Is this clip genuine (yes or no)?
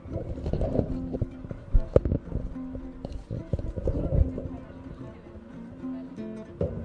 yes